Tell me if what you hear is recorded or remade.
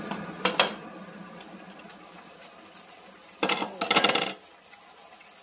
recorded